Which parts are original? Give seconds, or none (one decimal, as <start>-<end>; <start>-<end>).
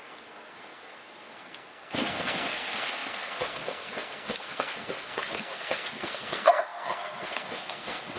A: none